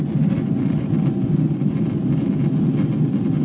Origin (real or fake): real